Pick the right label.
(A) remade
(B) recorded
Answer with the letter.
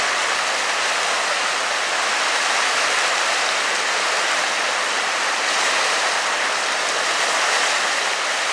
B